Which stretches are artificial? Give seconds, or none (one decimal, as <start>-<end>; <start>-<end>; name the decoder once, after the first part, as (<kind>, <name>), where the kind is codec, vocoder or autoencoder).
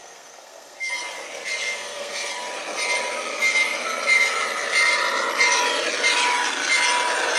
0.0-0.9 (codec, SNAC); 1.6-2.3